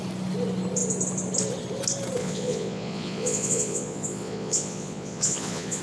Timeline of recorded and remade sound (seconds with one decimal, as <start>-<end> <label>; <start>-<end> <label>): 0.0-2.2 recorded; 2.2-5.8 remade